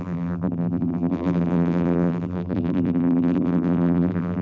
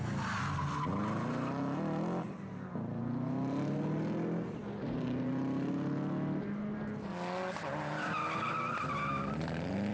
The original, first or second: second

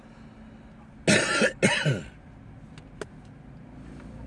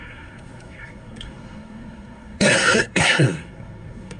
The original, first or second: first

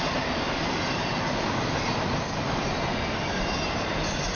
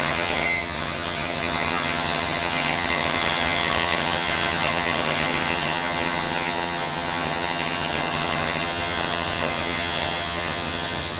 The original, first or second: first